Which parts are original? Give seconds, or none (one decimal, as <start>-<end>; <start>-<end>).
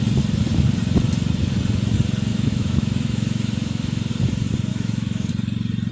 0.0-2.3; 4.1-4.7; 5.3-5.9